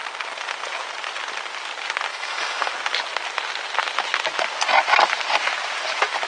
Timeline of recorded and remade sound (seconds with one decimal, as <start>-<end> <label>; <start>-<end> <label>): 0.0-2.1 recorded; 2.1-2.7 remade; 2.7-6.3 recorded